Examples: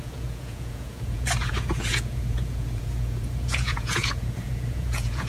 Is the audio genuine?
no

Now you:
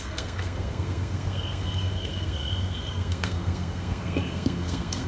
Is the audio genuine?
no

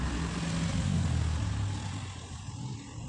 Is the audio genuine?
yes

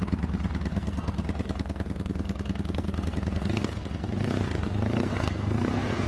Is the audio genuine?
no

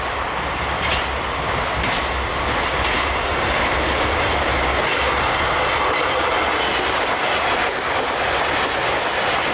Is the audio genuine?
yes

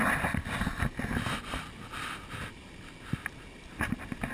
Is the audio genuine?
yes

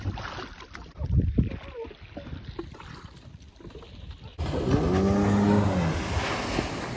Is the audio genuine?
yes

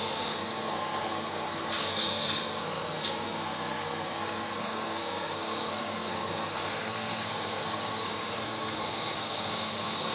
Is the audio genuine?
no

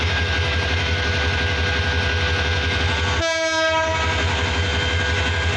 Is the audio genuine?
yes